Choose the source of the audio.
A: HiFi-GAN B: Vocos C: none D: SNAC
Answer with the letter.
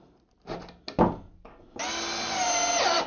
C